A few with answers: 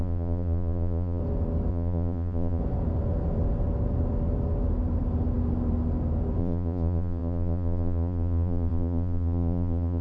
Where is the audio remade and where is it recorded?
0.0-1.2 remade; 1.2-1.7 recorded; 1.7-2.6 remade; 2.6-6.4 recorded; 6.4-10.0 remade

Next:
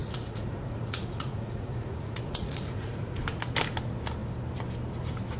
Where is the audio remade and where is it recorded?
0.0-3.2 remade; 3.2-5.4 recorded

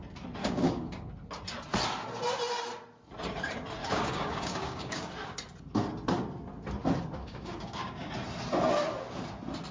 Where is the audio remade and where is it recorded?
0.0-0.4 recorded; 0.4-1.1 remade; 1.1-3.8 recorded; 3.8-5.1 remade; 5.1-7.2 recorded; 7.2-8.1 remade; 8.1-9.7 recorded